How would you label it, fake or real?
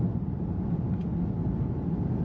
real